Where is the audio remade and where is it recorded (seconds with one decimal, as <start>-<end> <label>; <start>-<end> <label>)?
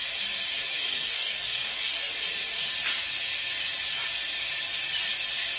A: 0.0-0.7 recorded; 0.7-2.1 remade; 2.1-5.6 recorded